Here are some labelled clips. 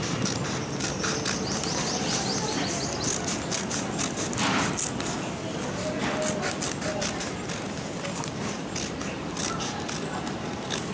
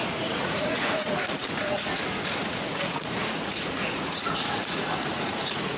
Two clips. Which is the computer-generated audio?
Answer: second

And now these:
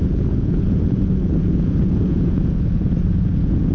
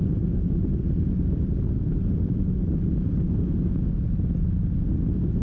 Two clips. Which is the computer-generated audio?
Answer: first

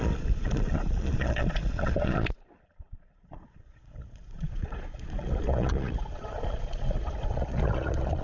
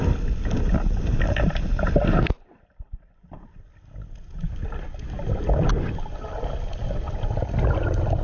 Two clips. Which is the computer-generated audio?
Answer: first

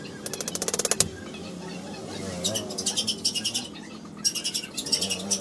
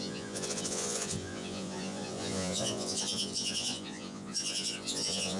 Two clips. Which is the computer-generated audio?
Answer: second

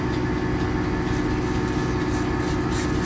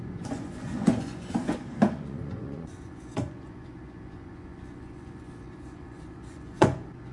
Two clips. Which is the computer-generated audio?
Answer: second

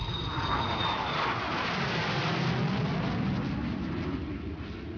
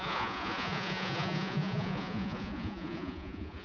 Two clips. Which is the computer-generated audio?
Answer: second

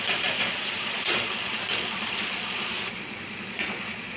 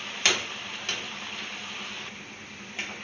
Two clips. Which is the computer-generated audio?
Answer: first